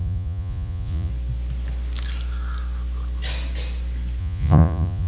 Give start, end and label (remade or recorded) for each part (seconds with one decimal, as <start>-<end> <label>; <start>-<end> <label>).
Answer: 0.0-1.1 remade; 1.1-4.2 recorded; 4.2-5.1 remade